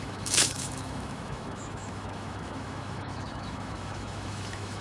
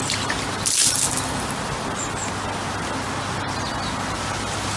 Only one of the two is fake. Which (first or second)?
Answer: first